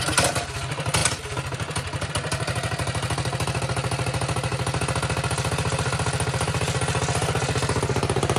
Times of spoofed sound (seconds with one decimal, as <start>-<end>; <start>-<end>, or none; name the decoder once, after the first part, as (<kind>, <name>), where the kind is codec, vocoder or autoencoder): none